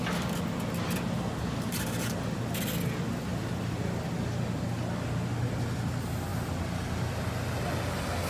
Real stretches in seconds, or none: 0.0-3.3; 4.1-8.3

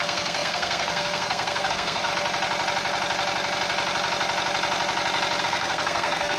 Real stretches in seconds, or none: 2.1-5.4